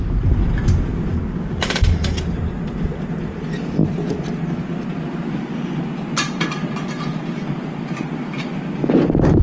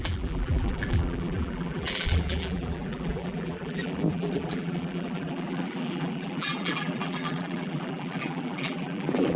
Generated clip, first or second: second